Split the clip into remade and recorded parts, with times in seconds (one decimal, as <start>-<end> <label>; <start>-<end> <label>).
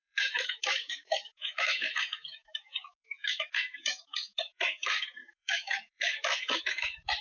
0.0-7.2 remade